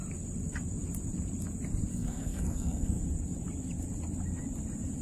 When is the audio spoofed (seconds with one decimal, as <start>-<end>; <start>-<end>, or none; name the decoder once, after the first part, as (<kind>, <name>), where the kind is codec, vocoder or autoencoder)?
1.9-3.0 (codec, SNAC)